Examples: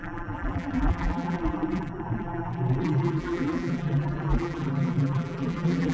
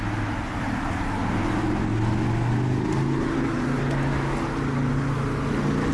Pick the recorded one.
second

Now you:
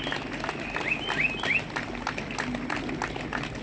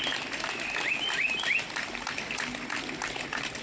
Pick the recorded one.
first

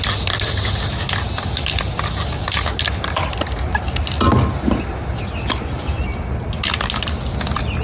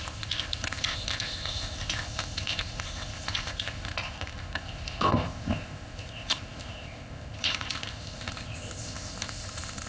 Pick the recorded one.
first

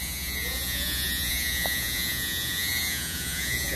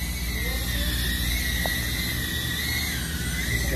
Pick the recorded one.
second